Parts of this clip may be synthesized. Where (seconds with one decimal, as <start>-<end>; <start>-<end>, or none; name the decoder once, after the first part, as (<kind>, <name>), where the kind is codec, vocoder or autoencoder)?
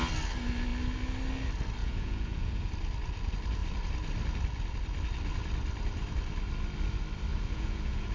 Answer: 1.8-2.7 (vocoder, Vocos); 7.3-8.1